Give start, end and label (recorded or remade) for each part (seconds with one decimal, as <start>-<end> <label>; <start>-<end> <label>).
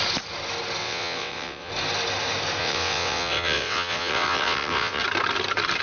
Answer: 0.0-0.8 recorded; 0.8-1.7 remade; 1.7-2.6 recorded; 2.6-5.0 remade; 5.0-5.8 recorded